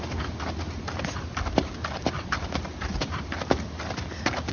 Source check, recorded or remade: recorded